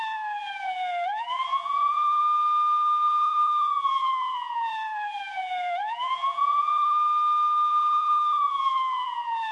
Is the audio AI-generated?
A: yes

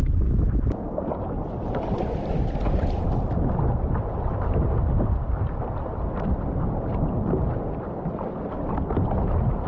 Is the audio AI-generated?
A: no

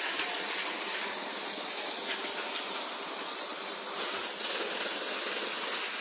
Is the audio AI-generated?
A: no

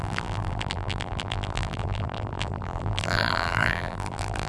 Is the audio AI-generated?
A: yes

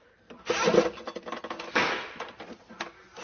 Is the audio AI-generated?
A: no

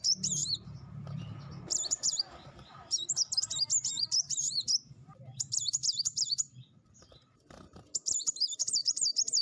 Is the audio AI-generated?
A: yes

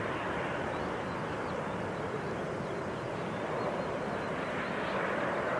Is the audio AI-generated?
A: no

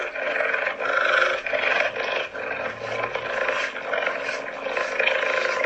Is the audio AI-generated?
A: no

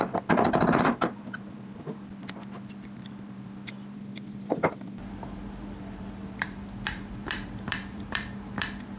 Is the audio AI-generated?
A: yes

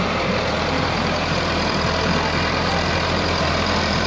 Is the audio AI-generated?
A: yes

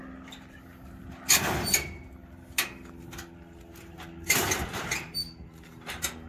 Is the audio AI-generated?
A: no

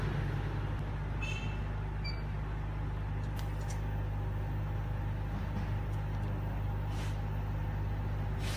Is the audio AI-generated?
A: no